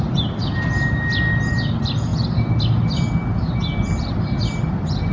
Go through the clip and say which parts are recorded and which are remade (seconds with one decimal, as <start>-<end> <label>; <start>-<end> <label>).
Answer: 0.0-5.1 recorded